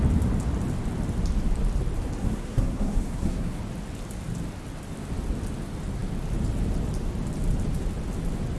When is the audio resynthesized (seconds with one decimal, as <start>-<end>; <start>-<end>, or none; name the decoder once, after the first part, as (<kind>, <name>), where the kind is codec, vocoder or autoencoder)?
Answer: 2.2-3.6 (codec, SNAC)